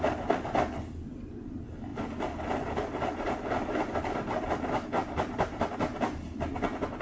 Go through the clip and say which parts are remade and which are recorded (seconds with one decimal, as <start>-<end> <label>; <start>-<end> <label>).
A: 0.0-5.0 recorded; 5.0-5.7 remade; 5.7-7.0 recorded